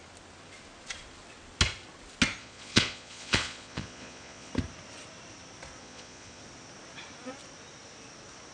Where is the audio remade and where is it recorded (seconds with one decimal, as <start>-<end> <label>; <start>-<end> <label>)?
0.0-2.4 recorded; 2.4-4.5 remade; 4.5-5.8 recorded; 5.8-6.4 remade; 6.4-8.5 recorded